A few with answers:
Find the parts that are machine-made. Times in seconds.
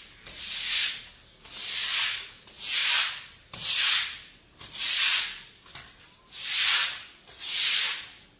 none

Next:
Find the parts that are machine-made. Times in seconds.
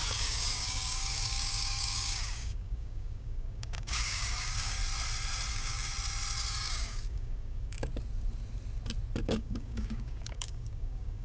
0.0-4.8 (codec, DAC); 5.5-5.9; 6.5-7.9; 9.2-11.2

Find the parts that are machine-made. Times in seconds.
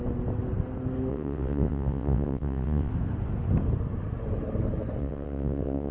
1.1-2.9 (vocoder, WaveNeXt); 5.0-5.9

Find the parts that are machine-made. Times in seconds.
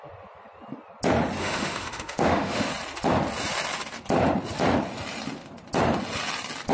1.4-2.7 (autoencoder, DAC-VAE)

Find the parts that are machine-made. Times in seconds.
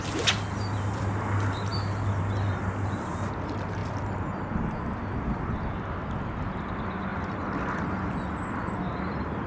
none